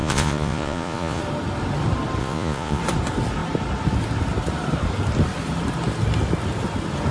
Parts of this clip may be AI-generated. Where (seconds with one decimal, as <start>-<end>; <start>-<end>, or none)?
0.0-1.2; 2.2-2.8